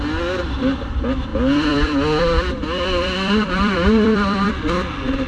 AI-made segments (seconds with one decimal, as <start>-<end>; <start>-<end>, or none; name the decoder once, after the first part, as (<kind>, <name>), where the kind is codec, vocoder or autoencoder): 1.3-4.5 (vocoder, BigVGAN v2)